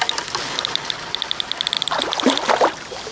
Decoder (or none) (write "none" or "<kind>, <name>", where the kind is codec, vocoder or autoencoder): none